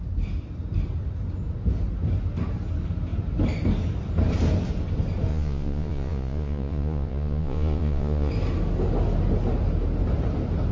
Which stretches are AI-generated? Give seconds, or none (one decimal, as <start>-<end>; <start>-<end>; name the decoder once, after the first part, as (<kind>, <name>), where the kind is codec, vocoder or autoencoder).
5.3-8.3 (vocoder, Vocos)